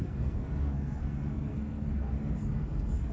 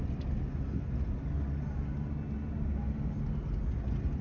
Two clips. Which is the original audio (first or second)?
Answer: second